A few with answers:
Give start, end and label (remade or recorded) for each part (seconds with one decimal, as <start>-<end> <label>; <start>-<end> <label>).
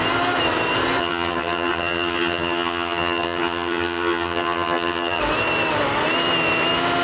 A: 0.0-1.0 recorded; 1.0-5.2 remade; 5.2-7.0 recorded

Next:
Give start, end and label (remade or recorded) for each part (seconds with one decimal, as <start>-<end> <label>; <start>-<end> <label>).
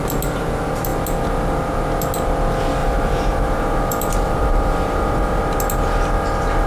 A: 0.0-2.8 recorded; 2.8-5.4 remade; 5.4-6.7 recorded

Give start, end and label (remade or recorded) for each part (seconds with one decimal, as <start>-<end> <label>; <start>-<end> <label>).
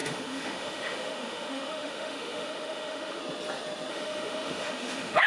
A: 0.0-3.2 remade; 3.2-3.9 recorded; 3.9-5.3 remade